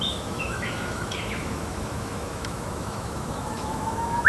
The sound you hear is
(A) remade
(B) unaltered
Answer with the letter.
A